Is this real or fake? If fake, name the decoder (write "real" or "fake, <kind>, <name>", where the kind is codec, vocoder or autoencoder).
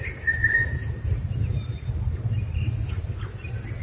real